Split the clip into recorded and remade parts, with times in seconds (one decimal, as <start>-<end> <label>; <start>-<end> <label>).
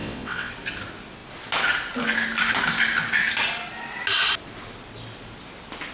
0.0-0.5 remade; 0.5-5.9 recorded